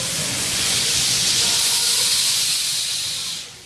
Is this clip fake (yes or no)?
yes